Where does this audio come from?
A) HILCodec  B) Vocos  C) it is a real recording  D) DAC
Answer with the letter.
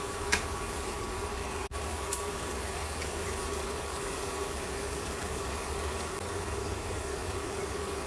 D